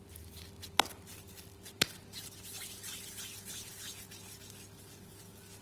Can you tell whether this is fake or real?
real